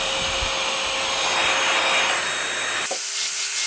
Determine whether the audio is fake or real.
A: real